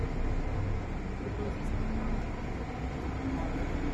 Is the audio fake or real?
real